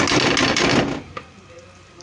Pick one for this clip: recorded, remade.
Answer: recorded